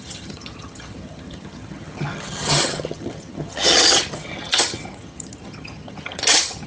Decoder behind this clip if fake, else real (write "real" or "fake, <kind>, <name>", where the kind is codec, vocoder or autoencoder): fake, vocoder, HiFi-GAN